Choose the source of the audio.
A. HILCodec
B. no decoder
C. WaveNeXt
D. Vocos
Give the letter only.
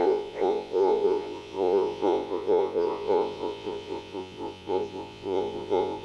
D